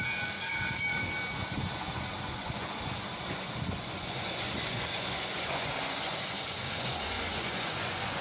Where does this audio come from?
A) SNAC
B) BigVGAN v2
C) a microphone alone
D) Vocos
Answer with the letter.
D